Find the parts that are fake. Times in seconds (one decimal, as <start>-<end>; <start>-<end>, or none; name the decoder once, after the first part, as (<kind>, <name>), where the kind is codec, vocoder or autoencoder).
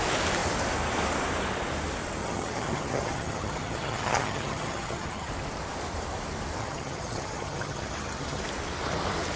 2.2-5.3 (vocoder, HiFi-GAN); 6.6-8.4